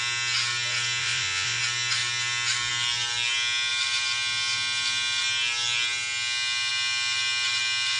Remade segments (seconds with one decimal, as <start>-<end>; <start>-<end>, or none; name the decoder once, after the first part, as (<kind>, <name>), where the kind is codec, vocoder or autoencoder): 1.0-1.6 (vocoder, Vocos)